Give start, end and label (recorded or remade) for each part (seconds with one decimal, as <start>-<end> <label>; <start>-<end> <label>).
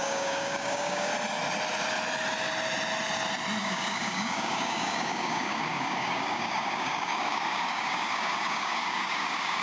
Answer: 0.0-1.1 remade; 1.1-3.6 recorded; 3.6-9.6 remade